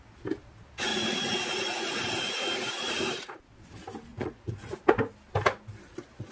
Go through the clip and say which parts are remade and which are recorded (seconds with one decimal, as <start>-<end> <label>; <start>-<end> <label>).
0.0-0.9 recorded; 0.9-3.4 remade; 3.4-4.1 recorded; 4.1-4.8 remade; 4.8-6.3 recorded